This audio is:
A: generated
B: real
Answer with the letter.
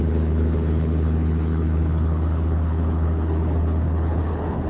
A